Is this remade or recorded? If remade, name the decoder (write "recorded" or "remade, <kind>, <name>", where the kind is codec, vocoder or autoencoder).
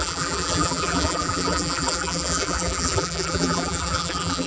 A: remade, vocoder, BigVGAN v2